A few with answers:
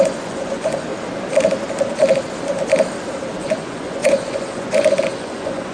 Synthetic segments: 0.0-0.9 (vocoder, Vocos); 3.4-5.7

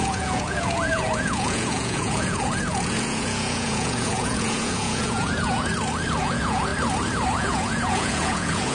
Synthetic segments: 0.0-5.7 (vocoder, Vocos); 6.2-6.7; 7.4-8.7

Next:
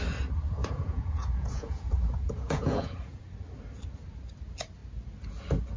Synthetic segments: 0.6-3.2 (vocoder, Vocos)

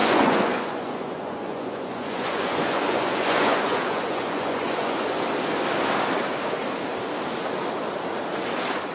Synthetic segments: 0.0-5.2 (vocoder, Vocos)

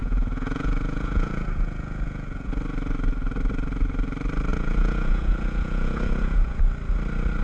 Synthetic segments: 0.0-2.5 (vocoder, Vocos); 4.5-6.6